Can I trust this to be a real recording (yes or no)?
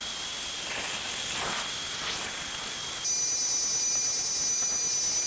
yes